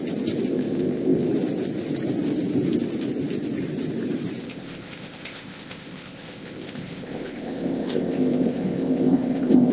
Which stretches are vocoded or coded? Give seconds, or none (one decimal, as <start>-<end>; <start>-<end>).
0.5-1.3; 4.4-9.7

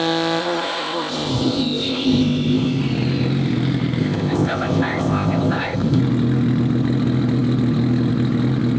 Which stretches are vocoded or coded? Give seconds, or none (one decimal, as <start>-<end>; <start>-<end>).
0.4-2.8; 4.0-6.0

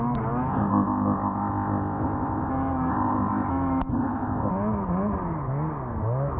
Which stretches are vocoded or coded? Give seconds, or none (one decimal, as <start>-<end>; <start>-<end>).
0.5-2.5; 2.9-3.5; 3.9-4.5

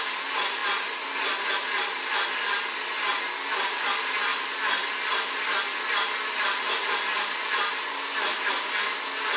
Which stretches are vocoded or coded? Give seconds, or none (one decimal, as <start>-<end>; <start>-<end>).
none

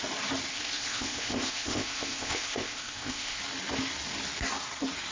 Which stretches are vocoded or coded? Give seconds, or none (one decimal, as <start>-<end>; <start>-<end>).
0.5-3.4

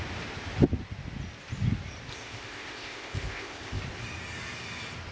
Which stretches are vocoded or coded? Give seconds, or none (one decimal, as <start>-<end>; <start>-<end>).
2.1-3.8